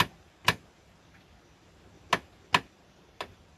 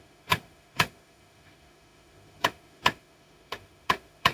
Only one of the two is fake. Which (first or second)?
second